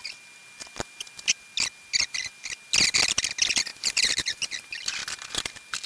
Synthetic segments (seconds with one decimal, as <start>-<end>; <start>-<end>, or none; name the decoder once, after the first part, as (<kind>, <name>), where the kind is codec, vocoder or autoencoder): 3.7-4.5 (vocoder, BigVGAN v2)